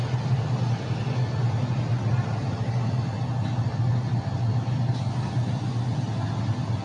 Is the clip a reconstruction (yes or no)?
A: no